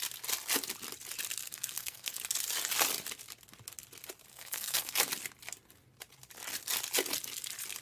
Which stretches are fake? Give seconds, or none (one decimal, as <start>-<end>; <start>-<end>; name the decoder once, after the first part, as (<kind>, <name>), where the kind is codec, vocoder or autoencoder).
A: 1.4-2.2 (codec, SNAC); 4.3-5.1